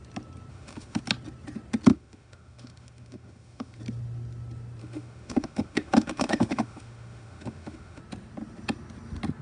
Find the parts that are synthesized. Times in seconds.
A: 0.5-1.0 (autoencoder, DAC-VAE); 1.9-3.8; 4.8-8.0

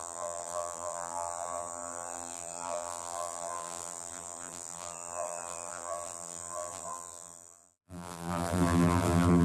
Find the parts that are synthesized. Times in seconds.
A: 0.0-9.4 (vocoder, BigVGAN v2)